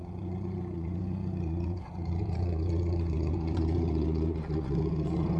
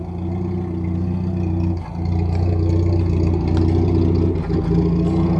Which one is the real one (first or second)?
second